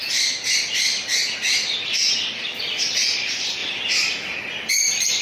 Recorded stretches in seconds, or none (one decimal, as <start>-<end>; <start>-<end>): 1.2-2.2; 3.6-4.7